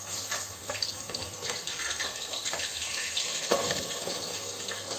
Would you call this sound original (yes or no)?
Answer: no